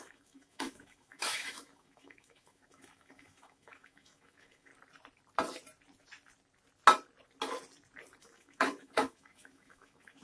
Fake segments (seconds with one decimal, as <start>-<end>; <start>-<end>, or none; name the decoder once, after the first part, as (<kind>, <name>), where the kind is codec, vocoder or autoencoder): 0.0-4.7 (autoencoder, DAC-VAE); 8.2-10.2